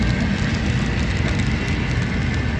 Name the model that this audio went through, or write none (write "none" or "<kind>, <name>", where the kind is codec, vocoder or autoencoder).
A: none